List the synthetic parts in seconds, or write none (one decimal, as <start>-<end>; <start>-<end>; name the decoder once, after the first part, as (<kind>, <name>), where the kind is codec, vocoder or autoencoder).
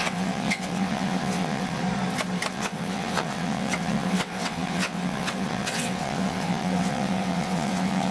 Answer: 0.0-1.8 (vocoder, WaveNeXt); 2.5-8.1